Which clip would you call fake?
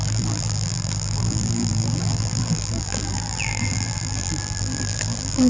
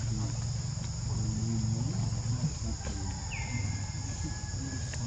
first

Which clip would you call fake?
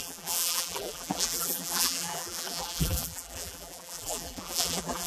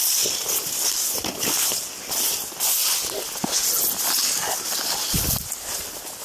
first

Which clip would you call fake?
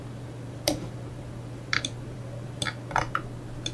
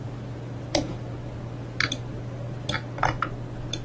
first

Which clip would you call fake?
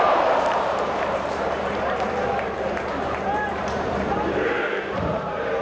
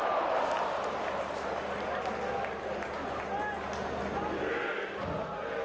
first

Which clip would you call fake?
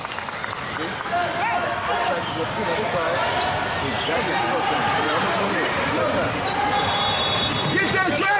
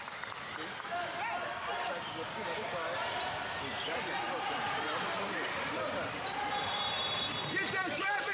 second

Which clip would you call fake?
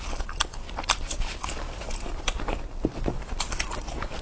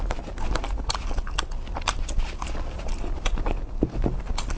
first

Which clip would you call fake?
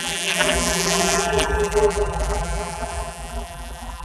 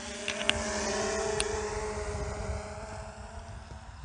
first